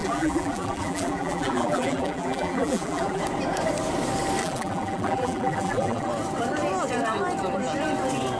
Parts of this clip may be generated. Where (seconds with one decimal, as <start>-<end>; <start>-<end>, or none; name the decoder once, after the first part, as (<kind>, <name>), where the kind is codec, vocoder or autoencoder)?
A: 0.0-3.2 (vocoder, BigVGAN v2); 4.4-6.1